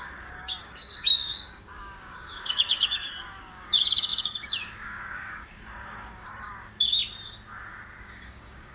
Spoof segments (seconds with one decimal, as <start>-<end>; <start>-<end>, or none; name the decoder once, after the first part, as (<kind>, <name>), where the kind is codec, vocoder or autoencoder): 0.0-7.0 (codec, DAC); 8.0-8.7